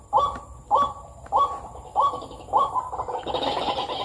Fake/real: fake